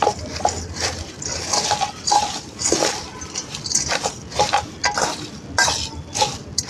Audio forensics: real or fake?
real